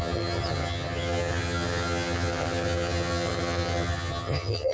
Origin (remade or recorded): remade